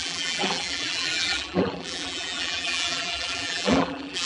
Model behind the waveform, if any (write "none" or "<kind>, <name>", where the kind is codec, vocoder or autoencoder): vocoder, BigVGAN v2